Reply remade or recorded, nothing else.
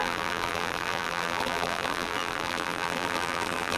remade